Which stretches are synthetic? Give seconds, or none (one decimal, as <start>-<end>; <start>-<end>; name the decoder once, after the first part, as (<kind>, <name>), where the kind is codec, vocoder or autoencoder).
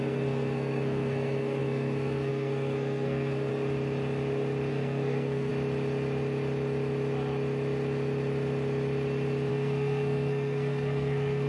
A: 0.0-3.5 (codec, SNAC); 4.7-5.5; 9.5-11.5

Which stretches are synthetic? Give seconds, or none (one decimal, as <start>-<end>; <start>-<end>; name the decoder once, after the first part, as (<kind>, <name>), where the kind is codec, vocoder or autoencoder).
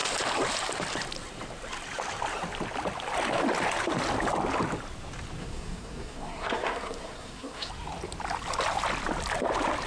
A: 5.4-7.7 (codec, SNAC)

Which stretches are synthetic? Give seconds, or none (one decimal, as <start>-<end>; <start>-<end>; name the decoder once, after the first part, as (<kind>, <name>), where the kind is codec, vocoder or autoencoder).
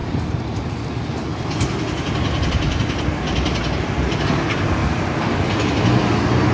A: 0.0-0.8 (vocoder, BigVGAN v2); 1.3-2.8; 4.8-5.5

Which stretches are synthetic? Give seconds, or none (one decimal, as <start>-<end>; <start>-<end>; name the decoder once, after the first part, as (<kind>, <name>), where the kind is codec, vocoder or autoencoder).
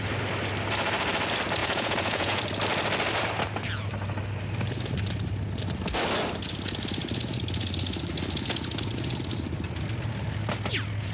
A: 1.6-2.4 (vocoder, Vocos)